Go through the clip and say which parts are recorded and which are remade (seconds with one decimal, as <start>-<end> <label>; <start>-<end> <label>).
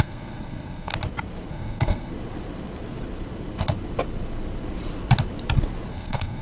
0.0-0.9 remade; 0.9-1.5 recorded; 1.5-2.1 remade; 2.1-5.9 recorded; 5.9-6.4 remade